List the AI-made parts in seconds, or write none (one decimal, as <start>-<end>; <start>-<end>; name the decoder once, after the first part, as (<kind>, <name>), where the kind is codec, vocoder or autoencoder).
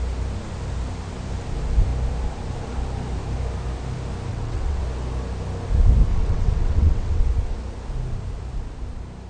4.3-4.8 (vocoder, WaveNeXt); 6.1-7.2